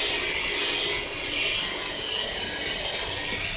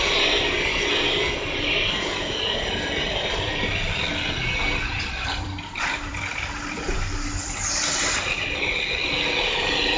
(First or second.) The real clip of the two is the first